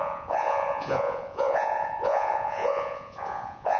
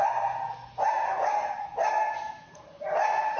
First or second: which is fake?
first